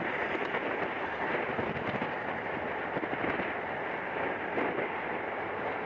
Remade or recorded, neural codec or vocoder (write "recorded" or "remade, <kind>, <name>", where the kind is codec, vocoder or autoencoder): recorded